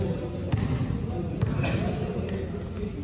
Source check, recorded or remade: recorded